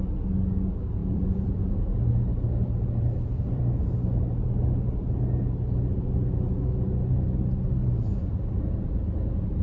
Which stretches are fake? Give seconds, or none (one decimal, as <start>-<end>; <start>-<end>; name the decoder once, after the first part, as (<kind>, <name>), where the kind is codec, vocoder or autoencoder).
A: 1.0-1.7 (vocoder, BigVGAN v2); 2.3-3.7